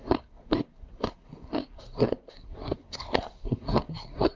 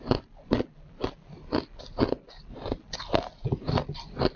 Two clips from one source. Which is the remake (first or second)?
first